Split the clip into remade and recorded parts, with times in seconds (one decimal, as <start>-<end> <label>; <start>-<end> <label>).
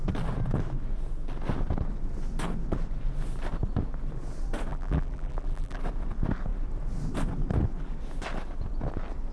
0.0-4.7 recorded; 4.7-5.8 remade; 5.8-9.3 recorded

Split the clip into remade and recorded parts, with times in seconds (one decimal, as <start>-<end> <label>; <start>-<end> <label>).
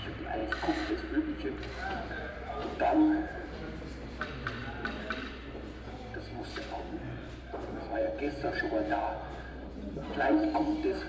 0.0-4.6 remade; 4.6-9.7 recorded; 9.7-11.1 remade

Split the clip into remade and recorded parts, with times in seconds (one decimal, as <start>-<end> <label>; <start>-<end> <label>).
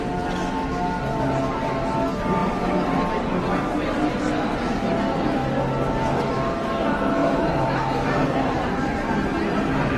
0.0-7.2 recorded; 7.2-8.6 remade; 8.6-10.0 recorded